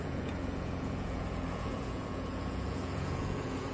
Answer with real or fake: fake